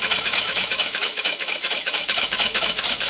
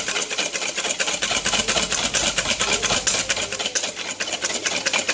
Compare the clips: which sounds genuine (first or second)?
second